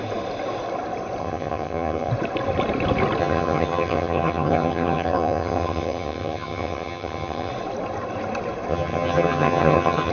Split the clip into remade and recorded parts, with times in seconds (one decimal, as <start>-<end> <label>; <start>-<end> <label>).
0.0-1.2 recorded; 1.2-2.1 remade; 2.1-3.2 recorded; 3.2-7.5 remade; 7.5-8.7 recorded; 8.7-10.1 remade